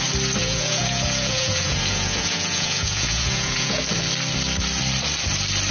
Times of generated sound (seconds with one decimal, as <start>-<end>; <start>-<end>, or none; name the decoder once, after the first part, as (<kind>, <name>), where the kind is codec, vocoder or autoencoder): 0.4-3.8 (vocoder, Vocos)